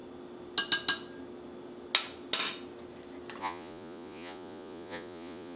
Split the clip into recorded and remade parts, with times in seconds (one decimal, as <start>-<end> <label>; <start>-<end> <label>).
0.0-3.4 recorded; 3.4-5.6 remade